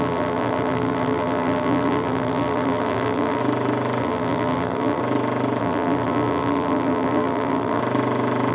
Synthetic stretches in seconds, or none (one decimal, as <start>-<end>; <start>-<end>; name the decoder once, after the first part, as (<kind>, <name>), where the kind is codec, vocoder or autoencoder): 0.0-3.4 (vocoder, BigVGAN v2); 4.0-5.0; 5.6-7.8